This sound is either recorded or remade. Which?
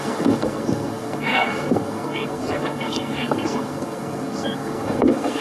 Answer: remade